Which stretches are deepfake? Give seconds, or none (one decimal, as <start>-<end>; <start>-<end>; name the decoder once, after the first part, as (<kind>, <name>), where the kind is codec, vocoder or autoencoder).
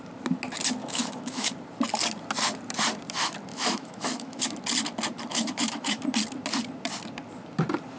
0.8-1.5 (autoencoder, DAC-VAE); 3.5-4.4; 5.3-6.0